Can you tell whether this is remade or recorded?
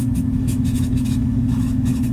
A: remade